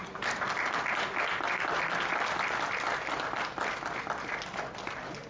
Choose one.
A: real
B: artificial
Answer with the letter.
A